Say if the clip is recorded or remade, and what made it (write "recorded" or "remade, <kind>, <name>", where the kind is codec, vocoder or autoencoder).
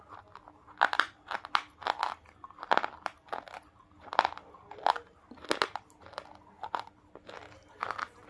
recorded